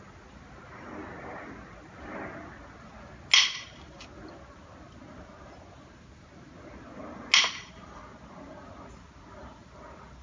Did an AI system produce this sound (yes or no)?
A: no